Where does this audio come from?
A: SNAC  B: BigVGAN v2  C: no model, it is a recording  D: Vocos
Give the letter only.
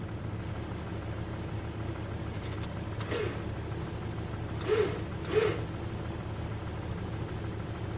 C